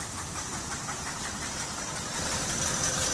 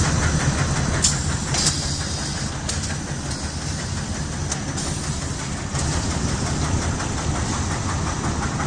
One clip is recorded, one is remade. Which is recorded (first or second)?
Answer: second